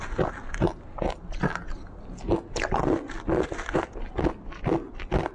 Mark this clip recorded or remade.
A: recorded